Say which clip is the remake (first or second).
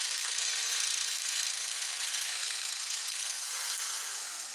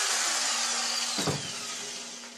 first